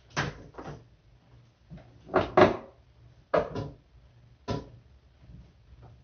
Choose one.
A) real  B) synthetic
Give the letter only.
A